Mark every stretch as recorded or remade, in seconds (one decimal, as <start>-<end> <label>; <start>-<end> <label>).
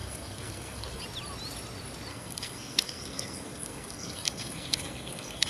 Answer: 0.0-1.0 remade; 1.0-2.1 recorded; 2.1-5.5 remade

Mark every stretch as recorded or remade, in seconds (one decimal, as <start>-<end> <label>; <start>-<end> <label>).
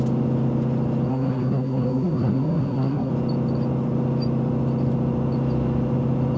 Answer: 0.0-1.1 recorded; 1.1-3.1 remade; 3.1-6.4 recorded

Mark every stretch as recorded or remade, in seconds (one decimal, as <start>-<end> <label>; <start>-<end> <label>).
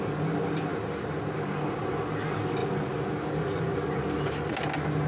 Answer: 0.0-5.1 recorded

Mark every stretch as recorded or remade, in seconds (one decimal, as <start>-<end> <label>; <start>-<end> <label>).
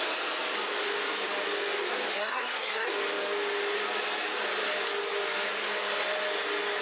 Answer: 0.0-2.1 recorded; 2.1-2.9 remade; 2.9-6.8 recorded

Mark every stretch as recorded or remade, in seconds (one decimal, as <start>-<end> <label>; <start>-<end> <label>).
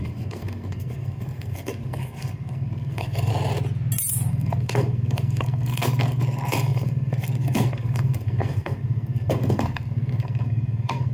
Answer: 0.0-3.3 remade; 3.3-4.3 recorded; 4.3-11.1 remade